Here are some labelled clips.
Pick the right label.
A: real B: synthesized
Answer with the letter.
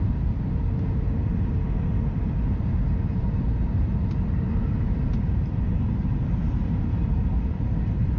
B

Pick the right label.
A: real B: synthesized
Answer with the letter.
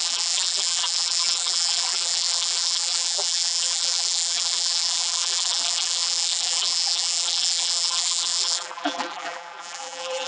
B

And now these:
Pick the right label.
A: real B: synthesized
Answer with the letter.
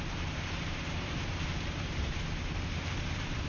B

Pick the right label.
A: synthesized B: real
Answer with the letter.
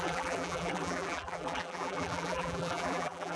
A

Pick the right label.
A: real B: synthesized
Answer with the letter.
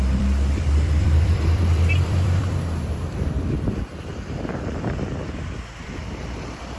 B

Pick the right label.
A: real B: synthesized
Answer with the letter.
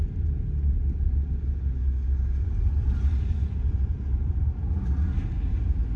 A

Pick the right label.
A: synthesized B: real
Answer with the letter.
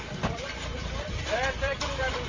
A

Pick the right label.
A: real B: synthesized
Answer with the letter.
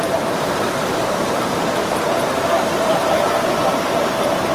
B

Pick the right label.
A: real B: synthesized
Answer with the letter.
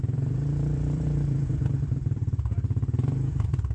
B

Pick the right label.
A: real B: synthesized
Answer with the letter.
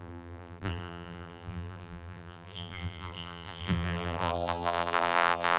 B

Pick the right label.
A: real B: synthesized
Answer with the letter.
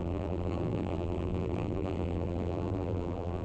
B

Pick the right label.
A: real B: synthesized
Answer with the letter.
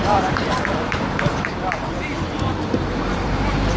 B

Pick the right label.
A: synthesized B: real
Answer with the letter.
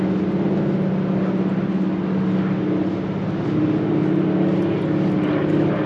B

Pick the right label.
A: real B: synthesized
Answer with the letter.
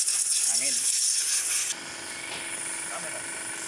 A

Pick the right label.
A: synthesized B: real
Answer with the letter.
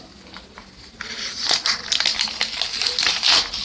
B